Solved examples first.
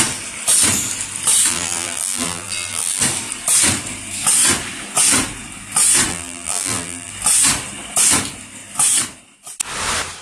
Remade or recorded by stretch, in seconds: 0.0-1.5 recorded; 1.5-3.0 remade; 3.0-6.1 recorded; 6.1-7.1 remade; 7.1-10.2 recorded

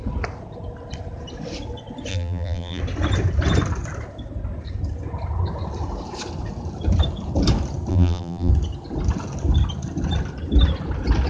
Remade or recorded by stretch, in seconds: 0.0-2.1 recorded; 2.1-2.8 remade; 2.8-7.9 recorded; 7.9-8.5 remade; 8.5-11.3 recorded

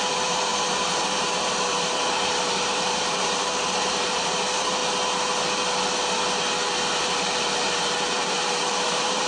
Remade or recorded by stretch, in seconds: 0.0-4.8 remade; 4.8-7.0 recorded; 7.0-9.3 remade

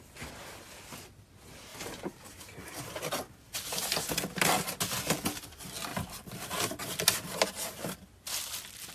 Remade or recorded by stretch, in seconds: 0.0-1.7 recorded; 1.7-4.0 remade; 4.0-8.9 recorded

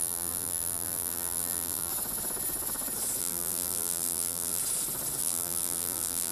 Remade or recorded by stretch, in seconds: 0.0-1.9 remade; 1.9-3.2 recorded; 3.2-4.6 remade; 4.6-5.2 recorded; 5.2-6.3 remade

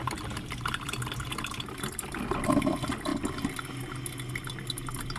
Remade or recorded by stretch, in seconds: 0.0-3.1 remade; 3.1-4.1 recorded; 4.1-5.2 remade

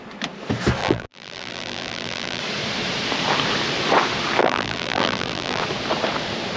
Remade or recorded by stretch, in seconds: 0.0-0.8 recorded; 0.8-2.4 remade; 2.4-4.4 recorded; 4.4-5.6 remade; 5.6-6.6 recorded

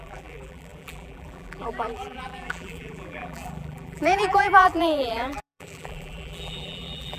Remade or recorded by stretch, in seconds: 0.0-7.2 remade